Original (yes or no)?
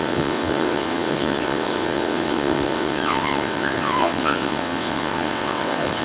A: no